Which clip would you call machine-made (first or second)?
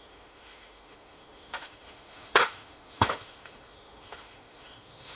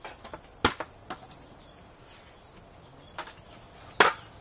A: first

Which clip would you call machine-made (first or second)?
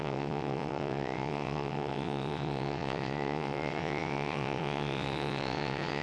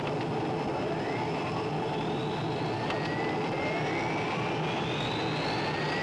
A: first